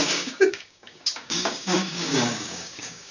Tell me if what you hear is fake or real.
fake